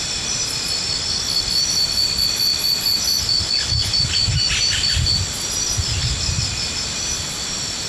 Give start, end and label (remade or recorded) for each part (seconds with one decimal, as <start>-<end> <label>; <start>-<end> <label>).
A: 0.0-7.9 recorded